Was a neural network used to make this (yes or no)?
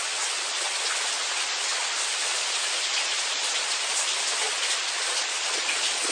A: yes